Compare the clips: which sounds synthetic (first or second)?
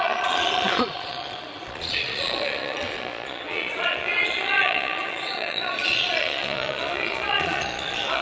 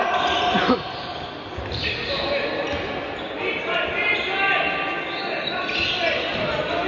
first